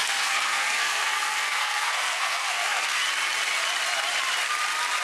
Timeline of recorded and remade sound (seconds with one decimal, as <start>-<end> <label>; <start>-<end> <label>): 0.0-3.0 remade; 3.0-5.0 recorded